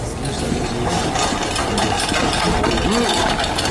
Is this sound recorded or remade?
recorded